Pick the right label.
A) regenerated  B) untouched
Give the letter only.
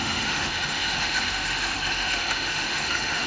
A